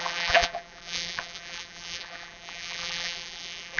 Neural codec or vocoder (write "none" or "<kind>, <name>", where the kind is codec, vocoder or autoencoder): vocoder, BigVGAN v2